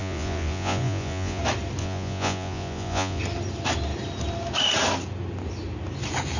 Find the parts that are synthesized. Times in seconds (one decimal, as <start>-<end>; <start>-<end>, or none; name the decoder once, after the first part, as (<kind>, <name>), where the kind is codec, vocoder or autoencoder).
0.0-1.4 (vocoder, Vocos); 1.8-3.2